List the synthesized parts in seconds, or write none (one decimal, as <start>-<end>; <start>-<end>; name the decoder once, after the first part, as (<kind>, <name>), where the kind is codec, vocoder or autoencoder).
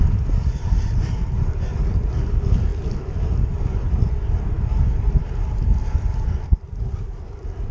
none